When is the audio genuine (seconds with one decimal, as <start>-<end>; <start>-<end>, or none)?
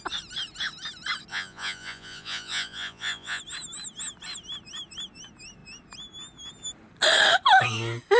0.0-1.3; 3.4-8.2